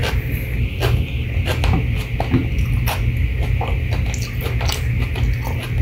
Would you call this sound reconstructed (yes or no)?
no